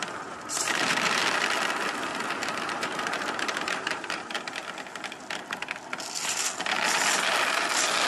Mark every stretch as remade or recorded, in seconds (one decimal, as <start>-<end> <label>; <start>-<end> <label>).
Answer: 0.0-1.2 remade; 1.2-2.7 recorded; 2.7-4.6 remade; 4.6-8.1 recorded